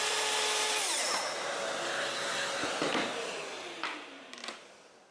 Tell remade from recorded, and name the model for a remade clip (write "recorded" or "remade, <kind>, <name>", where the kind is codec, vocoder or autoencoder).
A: recorded